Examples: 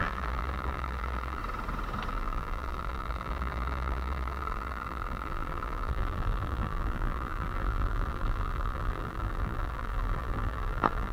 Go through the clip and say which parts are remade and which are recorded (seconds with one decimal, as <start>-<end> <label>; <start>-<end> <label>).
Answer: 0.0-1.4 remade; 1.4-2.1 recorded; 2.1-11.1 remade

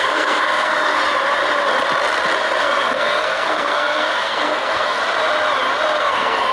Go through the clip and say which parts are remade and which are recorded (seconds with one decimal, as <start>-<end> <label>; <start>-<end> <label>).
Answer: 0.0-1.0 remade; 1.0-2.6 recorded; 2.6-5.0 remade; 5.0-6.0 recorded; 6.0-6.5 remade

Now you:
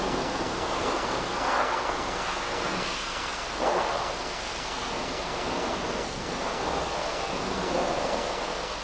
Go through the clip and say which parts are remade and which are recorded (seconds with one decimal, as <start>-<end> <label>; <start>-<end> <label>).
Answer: 0.0-8.8 remade